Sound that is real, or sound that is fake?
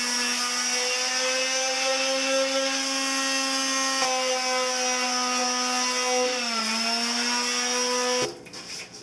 real